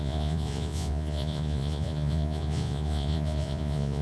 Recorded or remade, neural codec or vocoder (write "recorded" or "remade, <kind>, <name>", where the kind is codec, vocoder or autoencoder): remade, vocoder, Vocos